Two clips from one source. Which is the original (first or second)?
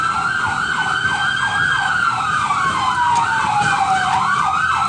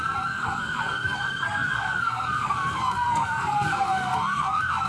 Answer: first